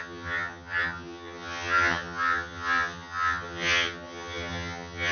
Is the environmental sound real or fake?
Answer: fake